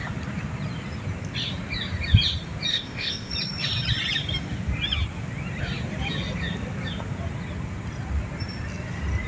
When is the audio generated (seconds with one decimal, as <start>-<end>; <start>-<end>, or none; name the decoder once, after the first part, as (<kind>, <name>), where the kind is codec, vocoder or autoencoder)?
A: 2.7-3.3 (codec, ZipCodec)